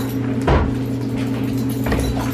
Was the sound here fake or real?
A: real